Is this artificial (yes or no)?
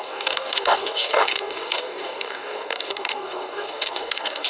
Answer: yes